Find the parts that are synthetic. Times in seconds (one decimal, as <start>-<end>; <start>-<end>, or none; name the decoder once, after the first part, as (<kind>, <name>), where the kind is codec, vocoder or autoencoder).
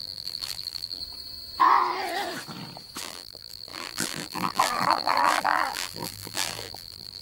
0.0-1.0 (vocoder, BigVGAN v2); 3.0-7.2